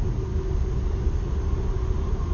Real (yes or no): yes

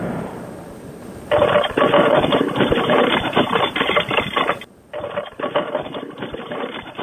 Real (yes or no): no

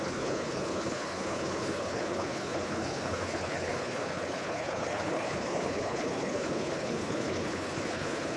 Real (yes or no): no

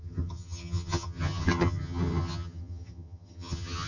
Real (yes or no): no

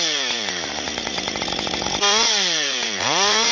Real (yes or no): no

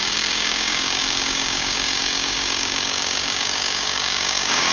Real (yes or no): no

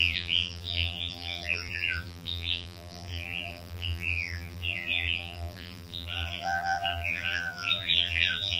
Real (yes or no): no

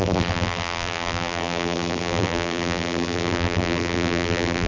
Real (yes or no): no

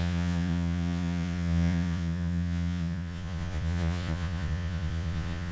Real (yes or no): no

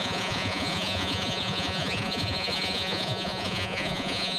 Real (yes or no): no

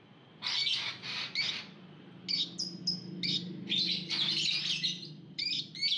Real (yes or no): yes